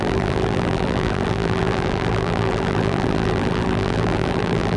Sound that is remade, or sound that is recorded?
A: remade